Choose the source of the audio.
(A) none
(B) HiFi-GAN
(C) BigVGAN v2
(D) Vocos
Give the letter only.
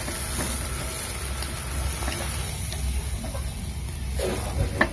A